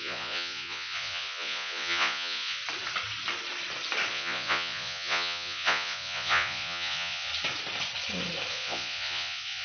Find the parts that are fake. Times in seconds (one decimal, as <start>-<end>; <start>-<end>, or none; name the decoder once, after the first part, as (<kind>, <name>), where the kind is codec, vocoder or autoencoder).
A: 0.0-2.6 (vocoder, Vocos); 4.1-7.3; 8.5-9.6